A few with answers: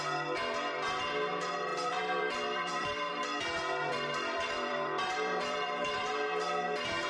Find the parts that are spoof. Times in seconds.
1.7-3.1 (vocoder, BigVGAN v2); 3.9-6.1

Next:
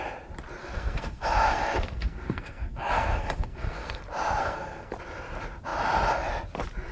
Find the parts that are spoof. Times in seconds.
0.6-4.0 (codec, SNAC); 4.4-4.9

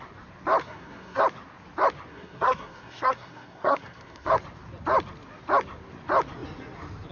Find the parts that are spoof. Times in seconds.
0.6-1.2 (codec, SNAC); 2.1-4.3

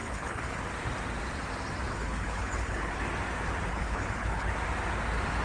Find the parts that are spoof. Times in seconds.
0.0-0.6 (codec, HILCodec); 1.9-3.0; 3.7-4.5

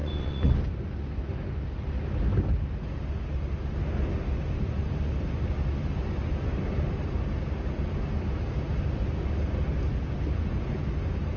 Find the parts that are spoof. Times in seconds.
0.0-0.6 (vocoder, Vocos)

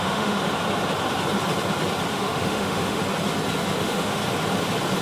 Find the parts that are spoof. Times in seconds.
0.0-0.4 (autoencoder, DAC-VAE); 2.1-3.0; 3.8-4.2